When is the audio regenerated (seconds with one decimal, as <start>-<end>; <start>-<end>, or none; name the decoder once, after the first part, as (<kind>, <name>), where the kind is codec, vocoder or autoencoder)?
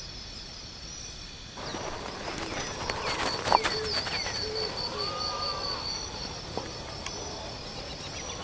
none